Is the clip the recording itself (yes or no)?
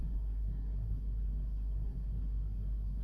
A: no